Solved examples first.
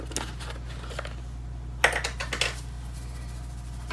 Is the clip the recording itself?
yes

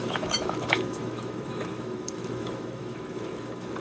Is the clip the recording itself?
no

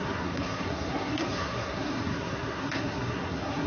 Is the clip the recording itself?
no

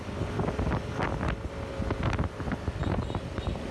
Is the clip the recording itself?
yes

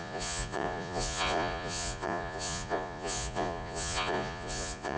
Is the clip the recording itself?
no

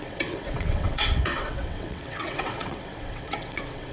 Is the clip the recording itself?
no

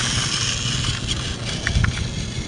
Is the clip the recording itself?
yes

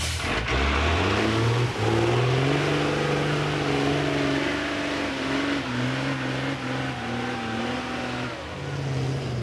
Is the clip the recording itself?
yes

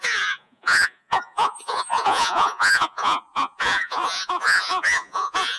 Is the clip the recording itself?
no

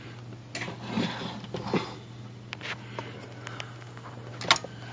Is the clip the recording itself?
yes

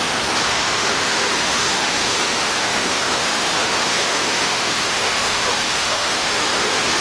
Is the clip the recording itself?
no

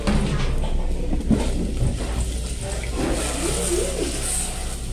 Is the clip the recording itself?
yes